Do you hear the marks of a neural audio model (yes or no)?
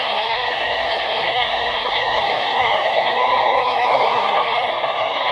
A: yes